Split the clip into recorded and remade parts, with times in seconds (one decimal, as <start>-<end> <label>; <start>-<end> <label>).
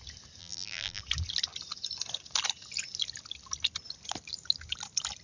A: 0.0-0.4 recorded; 0.4-1.0 remade; 1.0-5.2 recorded